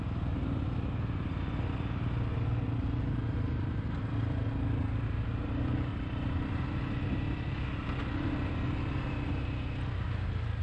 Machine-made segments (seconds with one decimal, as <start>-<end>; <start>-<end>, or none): 5.9-6.7

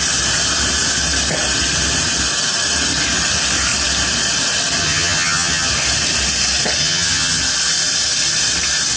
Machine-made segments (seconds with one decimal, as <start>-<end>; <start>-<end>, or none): 4.8-5.7; 6.8-7.4

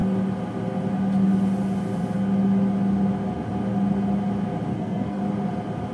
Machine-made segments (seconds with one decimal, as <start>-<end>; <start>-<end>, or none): 4.7-5.2

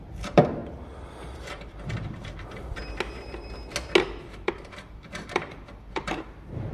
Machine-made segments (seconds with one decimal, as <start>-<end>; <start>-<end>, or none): 0.0-2.8; 4.2-6.7

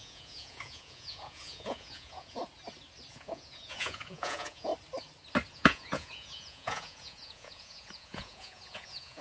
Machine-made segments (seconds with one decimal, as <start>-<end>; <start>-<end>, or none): 0.0-2.4; 3.1-4.7; 5.5-9.2

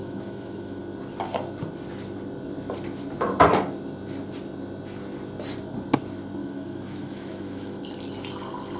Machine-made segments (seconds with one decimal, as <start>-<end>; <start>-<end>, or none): 0.0-0.8; 6.4-7.8

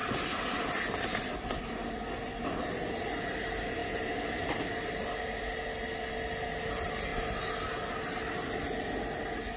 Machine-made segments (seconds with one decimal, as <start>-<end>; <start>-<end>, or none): 0.0-1.6

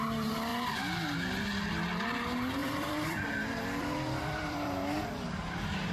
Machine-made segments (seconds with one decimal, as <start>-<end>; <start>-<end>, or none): 2.6-5.2